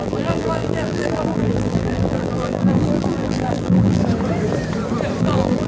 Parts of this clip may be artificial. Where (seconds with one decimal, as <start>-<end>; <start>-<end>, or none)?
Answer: 0.0-4.0; 5.2-5.7